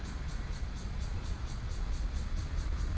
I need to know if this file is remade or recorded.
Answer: remade